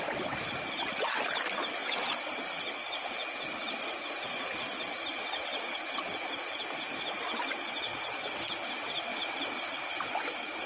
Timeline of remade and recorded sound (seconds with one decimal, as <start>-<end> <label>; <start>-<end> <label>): 0.0-10.7 recorded